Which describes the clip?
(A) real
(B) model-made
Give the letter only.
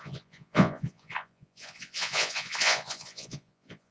B